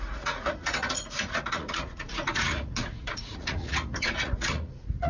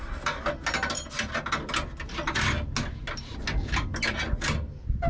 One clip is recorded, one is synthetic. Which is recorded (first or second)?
second